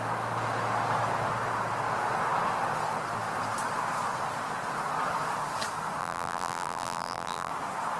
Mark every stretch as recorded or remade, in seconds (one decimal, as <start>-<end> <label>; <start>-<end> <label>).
0.0-6.0 recorded; 6.0-7.5 remade; 7.5-8.0 recorded